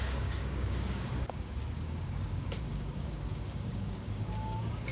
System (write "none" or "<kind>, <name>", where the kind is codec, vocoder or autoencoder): codec, DAC